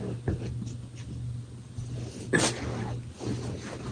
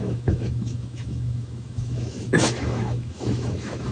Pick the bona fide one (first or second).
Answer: first